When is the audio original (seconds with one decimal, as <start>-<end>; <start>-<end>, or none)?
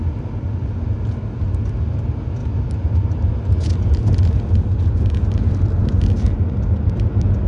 0.0-7.5